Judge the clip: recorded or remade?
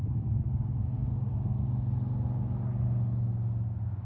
recorded